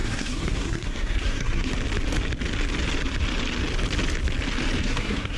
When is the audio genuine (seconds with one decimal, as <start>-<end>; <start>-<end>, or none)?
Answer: 1.7-4.8